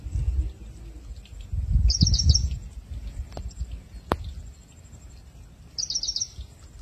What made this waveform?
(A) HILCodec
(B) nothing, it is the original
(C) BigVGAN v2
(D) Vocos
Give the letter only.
B